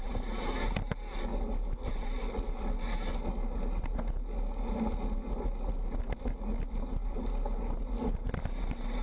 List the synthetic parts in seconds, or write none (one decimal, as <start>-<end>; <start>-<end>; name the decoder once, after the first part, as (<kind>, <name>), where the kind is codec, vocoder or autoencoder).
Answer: none